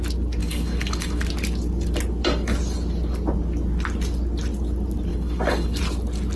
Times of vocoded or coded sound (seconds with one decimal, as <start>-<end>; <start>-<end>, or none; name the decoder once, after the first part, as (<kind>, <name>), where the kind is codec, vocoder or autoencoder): 0.4-1.2 (codec, DAC); 5.1-5.8